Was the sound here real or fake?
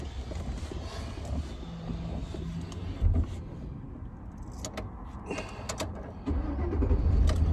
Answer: real